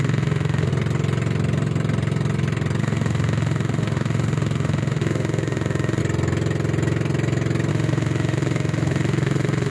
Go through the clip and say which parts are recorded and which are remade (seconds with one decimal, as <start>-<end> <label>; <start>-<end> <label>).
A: 0.0-0.7 remade; 0.7-2.8 recorded; 2.8-6.0 remade; 6.0-7.7 recorded; 7.7-9.7 remade